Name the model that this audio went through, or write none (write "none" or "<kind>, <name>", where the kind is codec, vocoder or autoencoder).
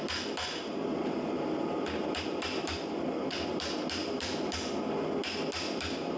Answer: none